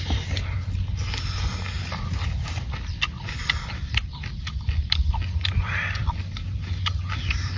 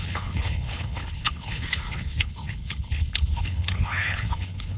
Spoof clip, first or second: second